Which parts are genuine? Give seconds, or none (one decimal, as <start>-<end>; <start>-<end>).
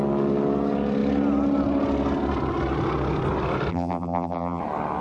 0.0-3.7; 4.6-5.0